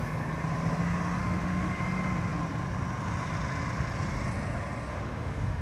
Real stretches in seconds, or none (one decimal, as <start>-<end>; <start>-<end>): 0.0-1.2; 1.8-4.9